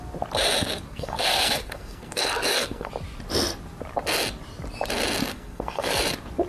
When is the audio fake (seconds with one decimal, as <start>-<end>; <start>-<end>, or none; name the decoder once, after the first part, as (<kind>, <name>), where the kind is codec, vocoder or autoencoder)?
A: 0.9-2.9 (codec, SNAC); 5.3-6.0